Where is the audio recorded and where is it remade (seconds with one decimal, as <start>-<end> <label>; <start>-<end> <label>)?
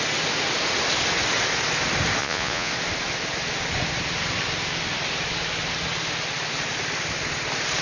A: 0.0-2.2 recorded; 2.2-2.7 remade; 2.7-7.8 recorded